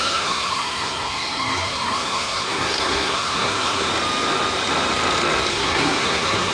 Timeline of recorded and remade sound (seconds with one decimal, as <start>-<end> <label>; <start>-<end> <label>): 0.0-3.9 remade; 3.9-5.5 recorded; 5.5-6.5 remade

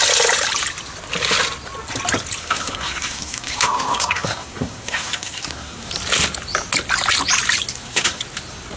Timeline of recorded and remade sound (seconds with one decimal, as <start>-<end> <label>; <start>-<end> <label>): 0.0-2.4 recorded; 2.4-5.9 remade; 5.9-7.7 recorded; 7.7-8.2 remade; 8.2-8.8 recorded

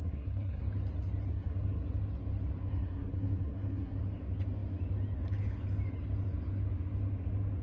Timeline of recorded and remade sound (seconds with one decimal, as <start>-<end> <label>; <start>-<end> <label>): 0.0-0.6 remade; 0.6-1.3 recorded; 1.3-1.8 remade; 1.8-2.7 recorded; 2.7-4.0 remade; 4.0-7.6 recorded

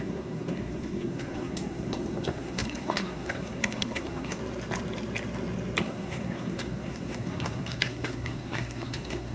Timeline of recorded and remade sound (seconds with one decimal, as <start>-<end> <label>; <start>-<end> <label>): 0.0-4.4 remade; 4.4-5.8 recorded; 5.8-9.3 remade

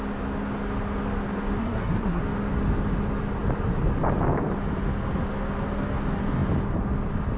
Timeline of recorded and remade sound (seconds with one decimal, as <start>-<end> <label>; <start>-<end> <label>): 0.0-1.6 recorded; 1.6-2.2 remade; 2.2-7.4 recorded